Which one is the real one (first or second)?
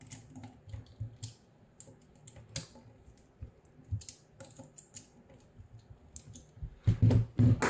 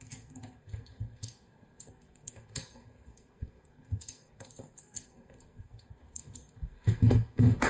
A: first